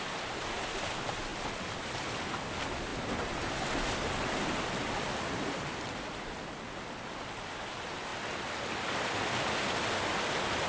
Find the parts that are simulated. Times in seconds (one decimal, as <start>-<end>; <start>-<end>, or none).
none